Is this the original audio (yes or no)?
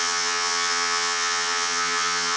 no